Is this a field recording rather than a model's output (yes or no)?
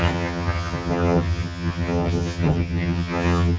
no